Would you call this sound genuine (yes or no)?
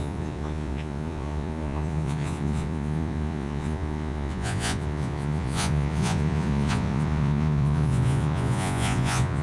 no